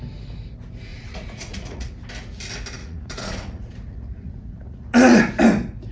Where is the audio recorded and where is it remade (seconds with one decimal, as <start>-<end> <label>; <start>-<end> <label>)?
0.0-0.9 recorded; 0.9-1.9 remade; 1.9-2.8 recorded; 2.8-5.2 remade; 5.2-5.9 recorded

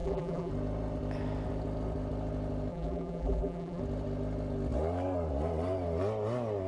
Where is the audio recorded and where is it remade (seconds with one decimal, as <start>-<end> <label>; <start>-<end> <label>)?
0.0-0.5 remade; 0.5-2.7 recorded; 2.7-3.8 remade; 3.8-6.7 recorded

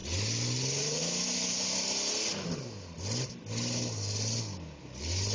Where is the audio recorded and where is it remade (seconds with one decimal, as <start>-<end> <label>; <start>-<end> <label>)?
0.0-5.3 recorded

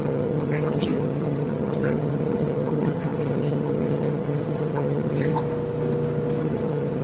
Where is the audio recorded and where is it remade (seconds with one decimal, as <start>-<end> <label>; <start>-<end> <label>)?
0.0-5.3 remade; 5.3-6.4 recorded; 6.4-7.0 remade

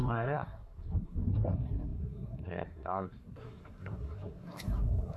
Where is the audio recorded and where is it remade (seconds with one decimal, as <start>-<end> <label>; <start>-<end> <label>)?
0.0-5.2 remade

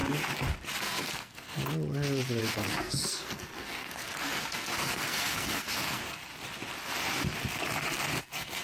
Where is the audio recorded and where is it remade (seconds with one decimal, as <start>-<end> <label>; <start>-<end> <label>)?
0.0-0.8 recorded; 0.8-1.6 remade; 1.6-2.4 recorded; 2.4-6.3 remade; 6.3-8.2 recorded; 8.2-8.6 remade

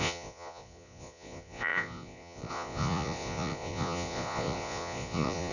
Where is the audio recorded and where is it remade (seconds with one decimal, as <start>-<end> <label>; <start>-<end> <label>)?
0.0-5.5 remade

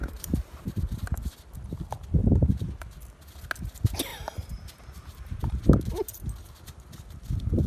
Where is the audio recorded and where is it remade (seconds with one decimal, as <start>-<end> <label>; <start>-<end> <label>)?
0.0-0.8 remade; 0.8-2.2 recorded; 2.2-2.7 remade; 2.7-4.1 recorded; 4.1-5.6 remade; 5.6-7.7 recorded